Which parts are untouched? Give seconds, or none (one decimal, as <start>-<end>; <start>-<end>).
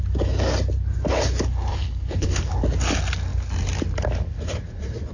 0.0-1.7; 2.4-5.1